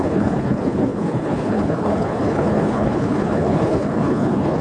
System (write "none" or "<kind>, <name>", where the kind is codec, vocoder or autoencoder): codec, HILCodec